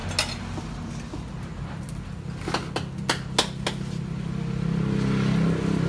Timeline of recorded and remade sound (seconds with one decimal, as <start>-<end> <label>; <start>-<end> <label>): 0.0-5.9 recorded